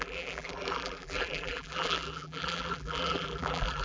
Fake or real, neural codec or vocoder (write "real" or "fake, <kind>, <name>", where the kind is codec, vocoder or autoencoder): fake, vocoder, BigVGAN v2